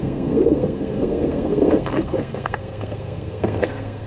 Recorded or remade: remade